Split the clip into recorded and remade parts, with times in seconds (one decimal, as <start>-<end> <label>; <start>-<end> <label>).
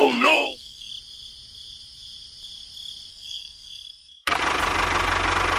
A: 0.0-0.9 remade; 0.9-3.1 recorded; 3.1-4.4 remade; 4.4-5.6 recorded